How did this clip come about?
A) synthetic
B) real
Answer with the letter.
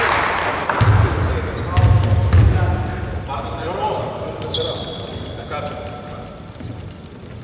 B